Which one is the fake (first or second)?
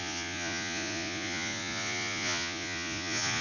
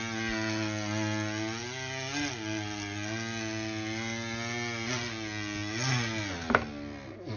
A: first